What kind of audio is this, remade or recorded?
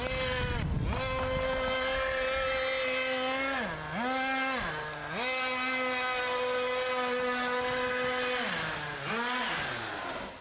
recorded